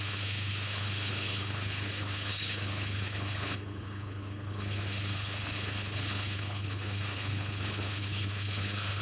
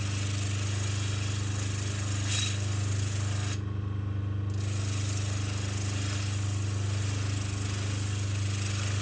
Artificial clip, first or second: first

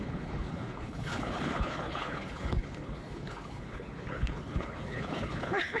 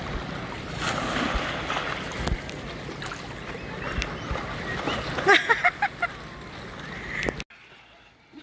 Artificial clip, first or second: first